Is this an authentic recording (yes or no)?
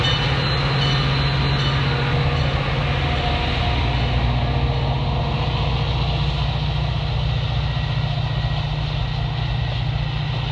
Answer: yes